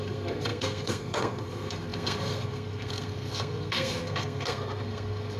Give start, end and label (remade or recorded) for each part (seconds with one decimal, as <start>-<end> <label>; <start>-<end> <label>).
0.0-5.4 remade